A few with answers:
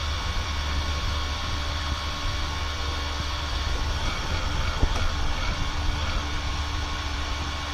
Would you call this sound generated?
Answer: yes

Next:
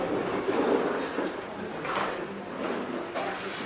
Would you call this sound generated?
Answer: no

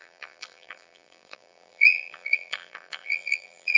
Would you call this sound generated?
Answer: yes